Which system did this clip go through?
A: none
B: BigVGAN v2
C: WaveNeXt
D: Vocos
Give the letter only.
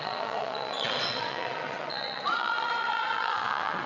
C